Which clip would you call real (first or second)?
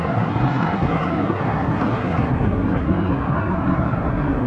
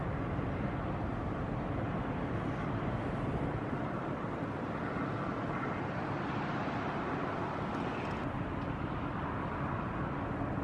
second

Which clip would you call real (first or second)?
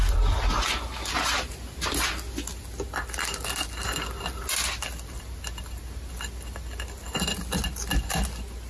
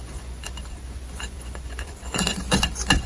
first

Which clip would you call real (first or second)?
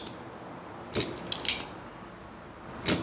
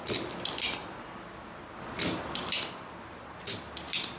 first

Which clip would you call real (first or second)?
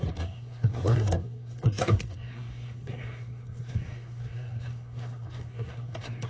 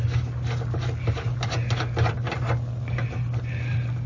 second